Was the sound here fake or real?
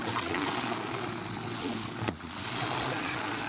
fake